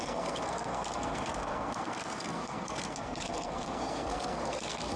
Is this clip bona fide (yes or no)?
no